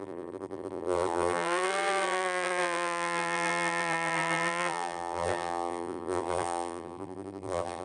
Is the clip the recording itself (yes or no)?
no